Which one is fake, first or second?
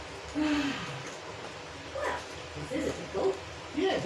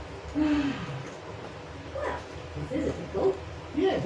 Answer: first